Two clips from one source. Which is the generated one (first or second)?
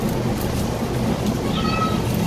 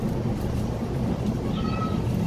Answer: second